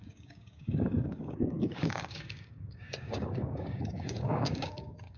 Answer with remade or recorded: remade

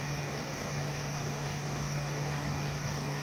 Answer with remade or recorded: remade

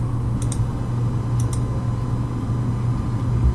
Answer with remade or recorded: recorded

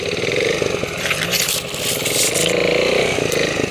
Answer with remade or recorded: recorded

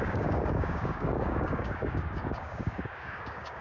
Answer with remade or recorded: remade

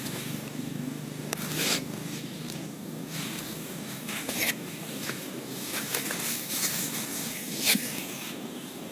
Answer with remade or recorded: remade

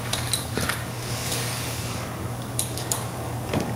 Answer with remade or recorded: remade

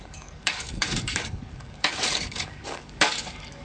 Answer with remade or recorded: remade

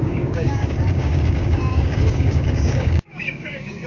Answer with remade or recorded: remade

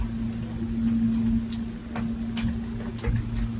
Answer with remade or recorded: recorded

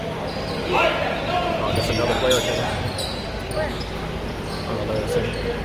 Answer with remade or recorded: recorded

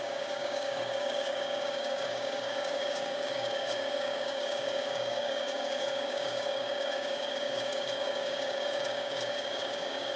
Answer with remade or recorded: remade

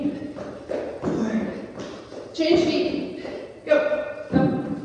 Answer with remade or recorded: recorded